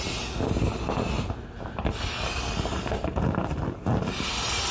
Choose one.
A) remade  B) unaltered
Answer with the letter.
B